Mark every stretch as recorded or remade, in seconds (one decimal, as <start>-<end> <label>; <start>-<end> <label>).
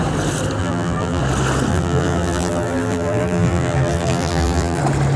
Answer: 0.0-0.6 recorded; 0.6-1.2 remade; 1.2-1.7 recorded; 1.7-4.8 remade; 4.8-5.2 recorded